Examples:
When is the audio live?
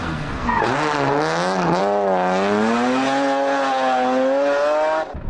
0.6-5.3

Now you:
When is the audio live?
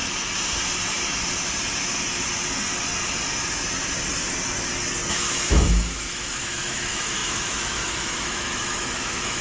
0.0-5.1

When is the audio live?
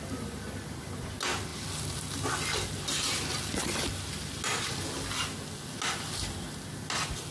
0.0-7.3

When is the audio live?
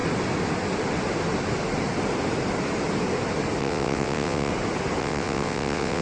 0.0-3.6; 4.5-5.0